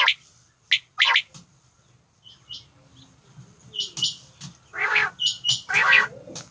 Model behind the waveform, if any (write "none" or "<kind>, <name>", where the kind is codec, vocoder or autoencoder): none